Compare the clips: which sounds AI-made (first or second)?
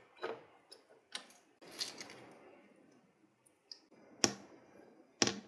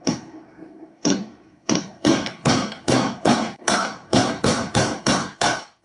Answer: second